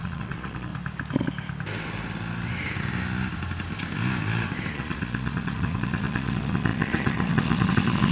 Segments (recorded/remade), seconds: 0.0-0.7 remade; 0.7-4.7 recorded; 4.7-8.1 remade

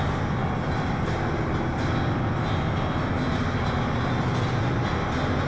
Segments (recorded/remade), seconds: 0.0-0.4 recorded; 0.4-1.9 remade; 1.9-5.5 recorded

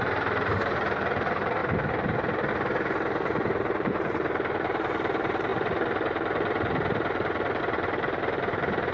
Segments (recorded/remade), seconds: 0.0-1.6 remade; 1.6-2.5 recorded; 2.5-8.9 remade

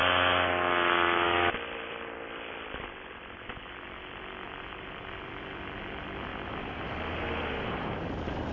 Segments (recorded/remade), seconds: 0.0-6.3 recorded; 6.3-8.1 remade; 8.1-8.5 recorded

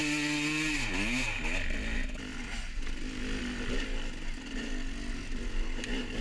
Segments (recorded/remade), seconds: 0.0-6.2 recorded

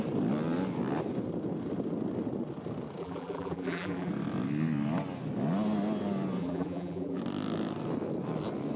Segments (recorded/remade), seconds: 0.0-3.0 recorded; 3.0-4.1 remade; 4.1-6.4 recorded; 6.4-7.2 remade; 7.2-8.8 recorded

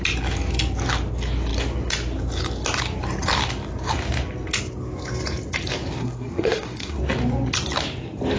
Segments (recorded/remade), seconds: 0.0-6.0 recorded; 6.0-7.0 remade; 7.0-8.4 recorded

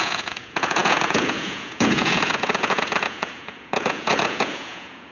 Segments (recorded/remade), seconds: 0.0-5.1 remade